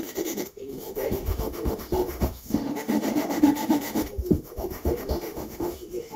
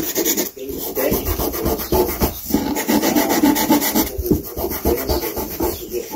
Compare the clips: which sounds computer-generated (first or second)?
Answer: first